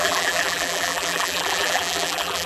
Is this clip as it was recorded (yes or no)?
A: no